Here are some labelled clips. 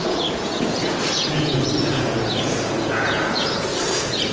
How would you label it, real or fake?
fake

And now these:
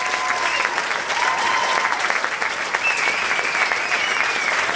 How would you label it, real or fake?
real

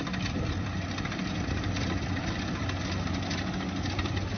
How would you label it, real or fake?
real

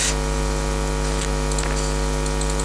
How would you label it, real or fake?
real